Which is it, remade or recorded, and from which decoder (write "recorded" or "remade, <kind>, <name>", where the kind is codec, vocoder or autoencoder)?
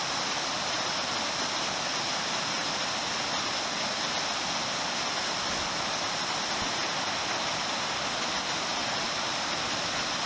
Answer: recorded